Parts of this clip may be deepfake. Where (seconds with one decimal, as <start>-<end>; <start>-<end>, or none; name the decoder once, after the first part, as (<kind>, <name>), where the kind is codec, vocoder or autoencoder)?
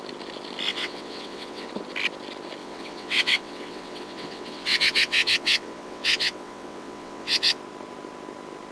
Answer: 0.7-1.7 (vocoder, WaveNeXt); 2.6-7.6